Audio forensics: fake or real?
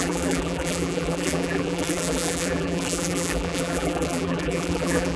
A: fake